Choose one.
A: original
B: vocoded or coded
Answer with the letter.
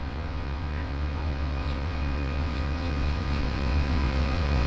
B